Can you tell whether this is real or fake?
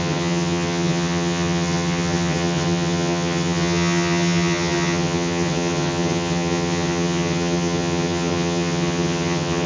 fake